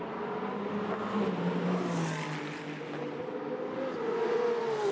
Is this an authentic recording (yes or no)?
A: yes